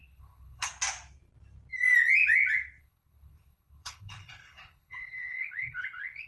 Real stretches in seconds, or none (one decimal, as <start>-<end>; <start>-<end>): 0.7-2.8